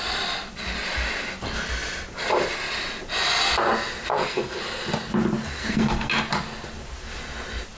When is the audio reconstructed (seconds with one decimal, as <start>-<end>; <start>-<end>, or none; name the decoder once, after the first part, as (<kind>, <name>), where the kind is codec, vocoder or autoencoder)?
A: 4.1-4.6 (codec, SNAC); 5.6-6.1